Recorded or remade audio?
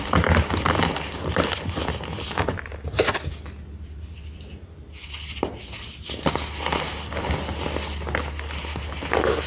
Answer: recorded